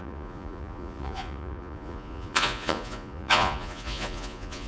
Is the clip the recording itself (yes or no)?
no